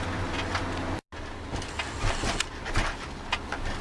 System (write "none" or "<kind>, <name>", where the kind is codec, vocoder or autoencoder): none